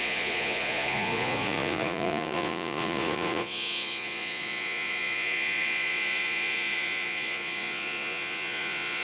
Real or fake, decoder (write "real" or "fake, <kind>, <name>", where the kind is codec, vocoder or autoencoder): fake, vocoder, Vocos